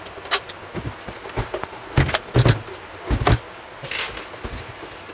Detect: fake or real real